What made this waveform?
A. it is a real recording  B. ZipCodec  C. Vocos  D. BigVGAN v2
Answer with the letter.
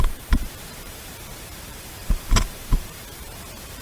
D